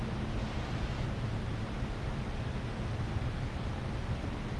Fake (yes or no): no